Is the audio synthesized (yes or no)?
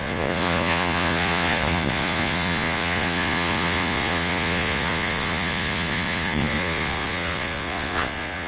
yes